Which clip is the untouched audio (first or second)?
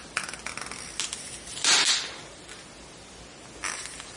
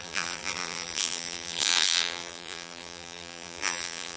first